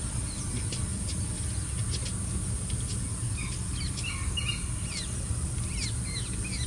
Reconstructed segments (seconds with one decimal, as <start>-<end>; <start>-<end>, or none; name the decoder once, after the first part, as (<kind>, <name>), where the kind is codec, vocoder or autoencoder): none